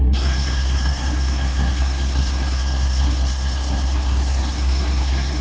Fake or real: fake